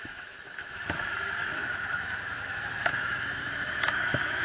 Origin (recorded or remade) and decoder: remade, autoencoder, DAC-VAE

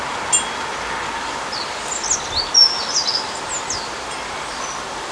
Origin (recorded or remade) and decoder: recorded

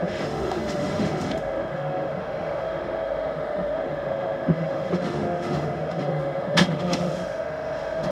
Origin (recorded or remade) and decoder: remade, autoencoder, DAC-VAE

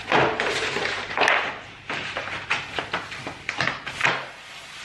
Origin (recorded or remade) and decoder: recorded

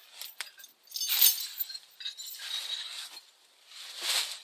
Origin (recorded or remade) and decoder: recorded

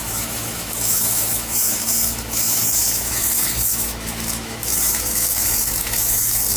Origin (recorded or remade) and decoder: remade, autoencoder, DAC-VAE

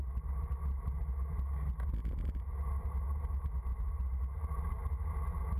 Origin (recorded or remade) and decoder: recorded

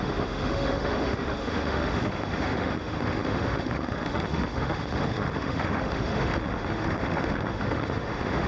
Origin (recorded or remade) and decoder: remade, autoencoder, DAC-VAE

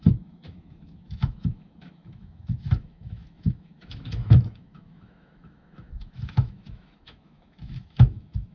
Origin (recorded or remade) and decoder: remade, autoencoder, DAC-VAE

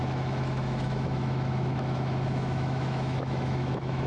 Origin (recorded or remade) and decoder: remade, autoencoder, DAC-VAE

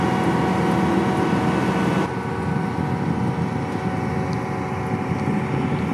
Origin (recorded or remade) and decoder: recorded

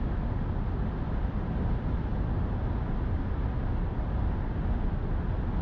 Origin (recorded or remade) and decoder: recorded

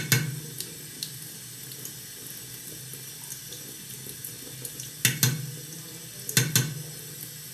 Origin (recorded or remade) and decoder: recorded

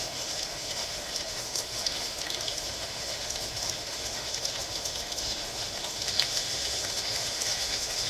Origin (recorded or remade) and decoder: remade, autoencoder, DAC-VAE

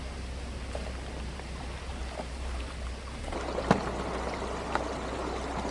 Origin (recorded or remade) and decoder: recorded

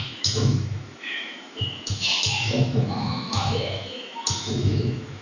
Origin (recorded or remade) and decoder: remade, autoencoder, DAC-VAE